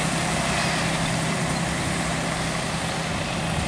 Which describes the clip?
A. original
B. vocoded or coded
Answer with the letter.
A